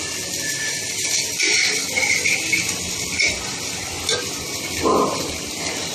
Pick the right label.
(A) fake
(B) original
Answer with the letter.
B